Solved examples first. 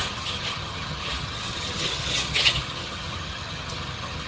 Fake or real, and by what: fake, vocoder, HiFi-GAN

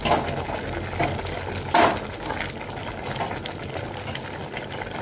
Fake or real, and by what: real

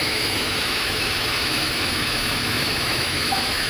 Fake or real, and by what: fake, autoencoder, DAC-VAE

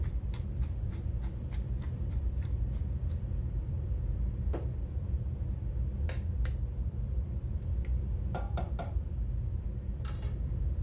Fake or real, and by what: fake, vocoder, BigVGAN v2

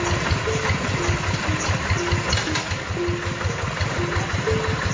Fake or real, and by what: real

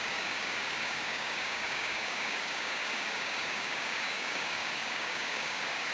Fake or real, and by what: fake, codec, DAC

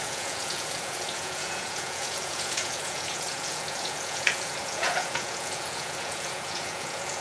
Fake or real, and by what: fake, vocoder, Vocos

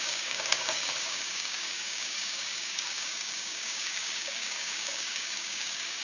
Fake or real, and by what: fake, codec, DAC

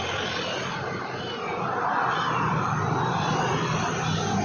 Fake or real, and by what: real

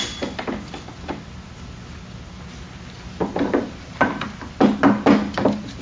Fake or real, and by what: real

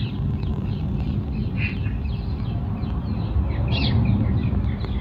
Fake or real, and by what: real